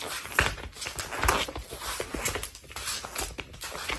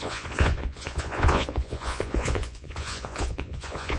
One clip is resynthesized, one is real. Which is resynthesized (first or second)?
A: second